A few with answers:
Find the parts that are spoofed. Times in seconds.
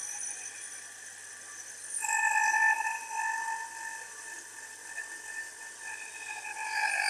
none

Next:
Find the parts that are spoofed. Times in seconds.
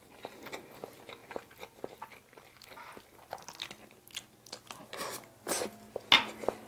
none